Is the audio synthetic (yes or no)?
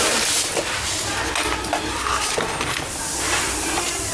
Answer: no